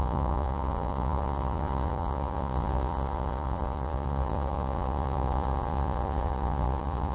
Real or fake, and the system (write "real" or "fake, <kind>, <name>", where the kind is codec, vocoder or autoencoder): fake, vocoder, Vocos